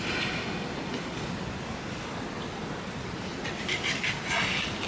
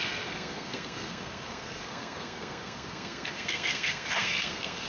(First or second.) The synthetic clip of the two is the second